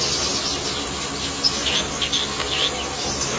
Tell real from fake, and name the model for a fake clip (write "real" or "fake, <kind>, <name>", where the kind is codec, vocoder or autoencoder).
real